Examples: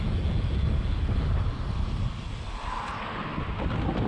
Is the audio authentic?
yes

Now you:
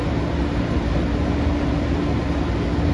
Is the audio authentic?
yes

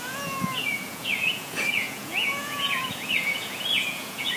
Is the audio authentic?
no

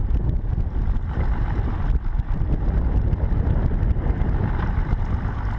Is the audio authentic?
yes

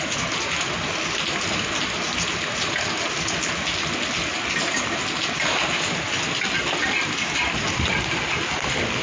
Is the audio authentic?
yes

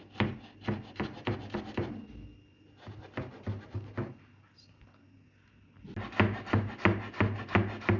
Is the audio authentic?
yes